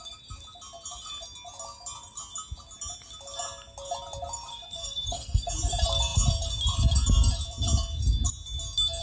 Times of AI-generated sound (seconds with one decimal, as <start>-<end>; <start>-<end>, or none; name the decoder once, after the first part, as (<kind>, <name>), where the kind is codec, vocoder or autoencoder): 4.5-5.5 (codec, SNAC)